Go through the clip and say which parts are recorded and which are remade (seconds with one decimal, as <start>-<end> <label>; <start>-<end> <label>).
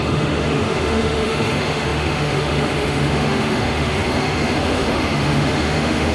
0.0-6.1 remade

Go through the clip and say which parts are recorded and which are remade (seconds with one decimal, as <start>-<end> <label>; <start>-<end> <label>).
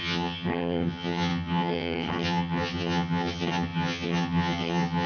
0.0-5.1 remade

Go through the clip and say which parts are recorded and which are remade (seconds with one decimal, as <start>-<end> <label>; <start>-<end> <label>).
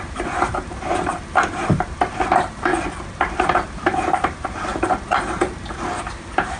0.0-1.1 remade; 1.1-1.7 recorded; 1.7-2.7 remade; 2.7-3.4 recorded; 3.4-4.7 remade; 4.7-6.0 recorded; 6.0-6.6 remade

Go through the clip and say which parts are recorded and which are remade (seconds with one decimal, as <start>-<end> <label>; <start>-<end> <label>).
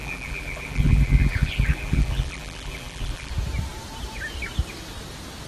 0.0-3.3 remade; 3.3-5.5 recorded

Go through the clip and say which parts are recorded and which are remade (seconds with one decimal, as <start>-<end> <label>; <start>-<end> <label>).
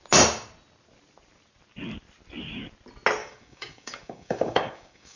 0.0-3.2 recorded; 3.2-5.2 remade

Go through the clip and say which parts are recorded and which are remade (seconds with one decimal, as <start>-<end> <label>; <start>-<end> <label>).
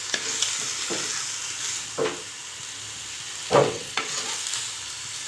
0.0-3.6 recorded; 3.6-4.2 remade; 4.2-5.3 recorded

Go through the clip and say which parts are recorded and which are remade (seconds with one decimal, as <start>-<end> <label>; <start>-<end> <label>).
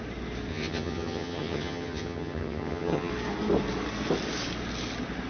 0.0-0.5 recorded; 0.5-3.1 remade; 3.1-5.3 recorded